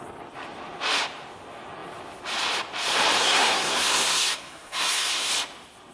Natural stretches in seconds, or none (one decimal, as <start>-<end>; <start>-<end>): 0.0-3.2; 5.3-5.9